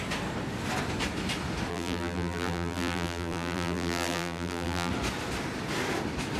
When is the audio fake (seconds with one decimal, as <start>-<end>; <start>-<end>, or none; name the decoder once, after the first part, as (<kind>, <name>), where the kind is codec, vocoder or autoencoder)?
1.7-4.9 (vocoder, BigVGAN v2)